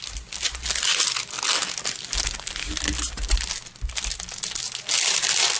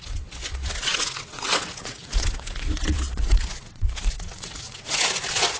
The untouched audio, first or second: first